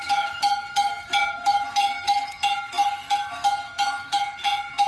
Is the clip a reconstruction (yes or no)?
yes